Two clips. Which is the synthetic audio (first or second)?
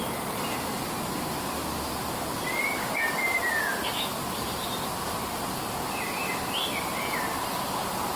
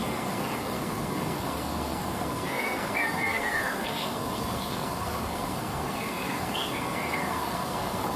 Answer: second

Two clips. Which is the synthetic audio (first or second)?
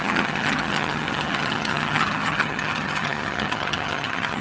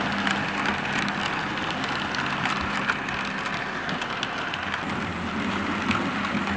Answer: first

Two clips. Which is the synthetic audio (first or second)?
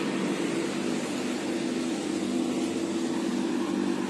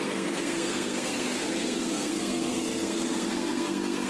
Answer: second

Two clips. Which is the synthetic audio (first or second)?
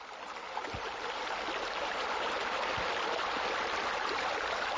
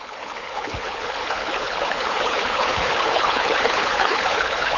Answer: second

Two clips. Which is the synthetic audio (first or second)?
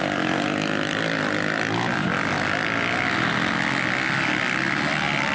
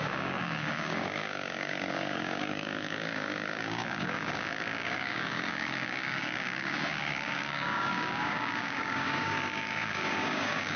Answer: second